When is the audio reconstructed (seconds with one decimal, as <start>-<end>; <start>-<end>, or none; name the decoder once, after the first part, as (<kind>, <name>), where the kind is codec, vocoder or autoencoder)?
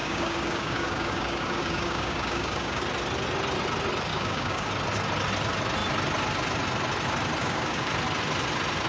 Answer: 0.0-2.8 (codec, DAC); 4.1-4.7; 7.4-7.9